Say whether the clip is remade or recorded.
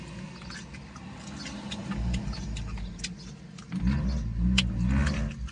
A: recorded